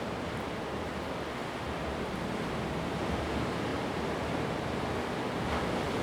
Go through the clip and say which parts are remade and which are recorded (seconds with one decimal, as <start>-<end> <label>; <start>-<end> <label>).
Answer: 0.0-3.7 recorded; 3.7-5.2 remade; 5.2-6.0 recorded